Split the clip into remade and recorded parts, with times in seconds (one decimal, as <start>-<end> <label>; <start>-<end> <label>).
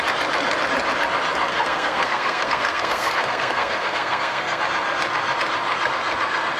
0.0-1.5 recorded; 1.5-4.6 remade; 4.6-6.6 recorded